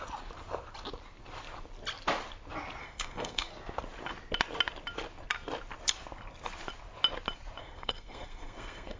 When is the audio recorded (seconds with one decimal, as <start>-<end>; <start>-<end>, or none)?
0.0-2.8; 3.5-7.6